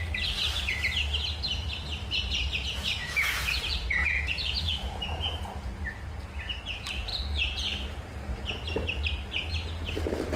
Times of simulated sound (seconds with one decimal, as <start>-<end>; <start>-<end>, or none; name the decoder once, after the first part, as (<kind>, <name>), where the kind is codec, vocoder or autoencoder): 3.0-5.3 (vocoder, Vocos)